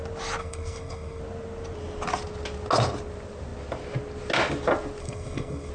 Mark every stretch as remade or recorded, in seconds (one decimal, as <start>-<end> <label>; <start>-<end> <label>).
0.0-0.4 recorded; 0.4-1.2 remade; 1.2-5.0 recorded; 5.0-5.7 remade